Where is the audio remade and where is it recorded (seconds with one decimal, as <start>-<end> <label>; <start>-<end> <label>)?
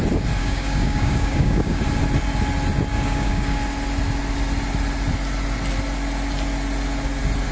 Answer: 0.0-0.4 recorded; 0.4-1.8 remade; 1.8-2.9 recorded; 2.9-3.6 remade; 3.6-7.5 recorded